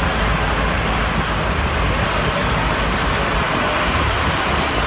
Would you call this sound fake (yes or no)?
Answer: no